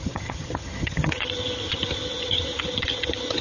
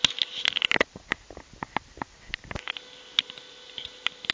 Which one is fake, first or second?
first